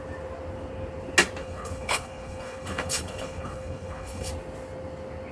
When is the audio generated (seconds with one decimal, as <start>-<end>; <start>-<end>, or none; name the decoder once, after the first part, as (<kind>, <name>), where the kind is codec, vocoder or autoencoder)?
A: 1.4-4.3 (codec, HILCodec)